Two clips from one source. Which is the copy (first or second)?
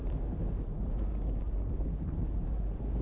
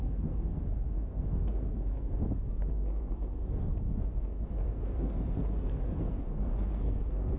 second